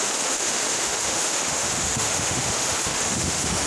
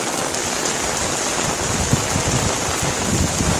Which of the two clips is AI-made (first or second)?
first